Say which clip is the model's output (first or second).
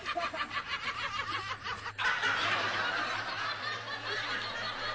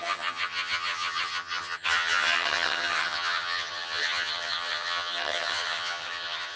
second